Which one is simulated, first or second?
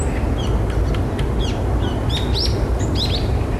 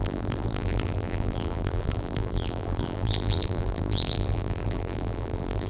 second